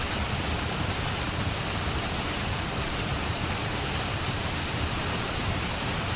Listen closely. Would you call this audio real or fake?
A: fake